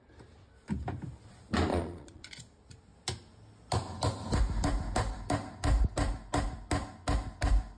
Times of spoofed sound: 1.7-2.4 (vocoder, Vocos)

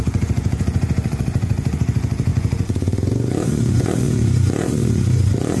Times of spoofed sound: 0.0-5.6 (vocoder, Vocos)

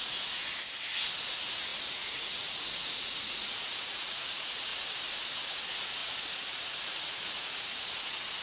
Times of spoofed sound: 0.0-0.4 (vocoder, Vocos); 1.1-4.7; 5.3-8.4

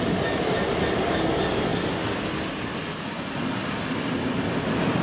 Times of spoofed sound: none

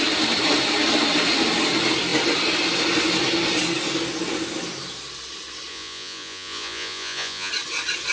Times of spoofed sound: 5.7-7.5 (vocoder, Vocos)

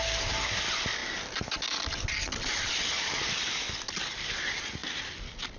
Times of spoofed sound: none

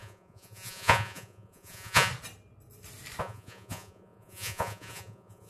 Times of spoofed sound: 0.0-2.1 (vocoder, Vocos); 3.2-5.5

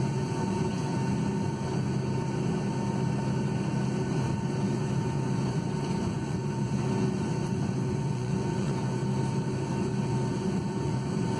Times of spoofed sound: 0.0-0.9 (vocoder, Vocos); 4.4-9.0; 9.8-11.4